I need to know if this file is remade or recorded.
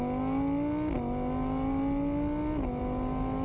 recorded